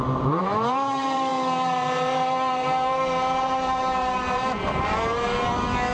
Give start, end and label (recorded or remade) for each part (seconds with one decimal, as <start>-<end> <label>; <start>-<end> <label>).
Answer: 0.0-5.9 remade